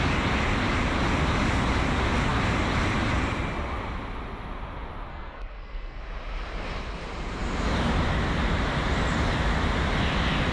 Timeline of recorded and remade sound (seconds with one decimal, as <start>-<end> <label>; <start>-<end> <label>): 0.0-5.1 recorded; 5.1-6.0 remade; 6.0-10.5 recorded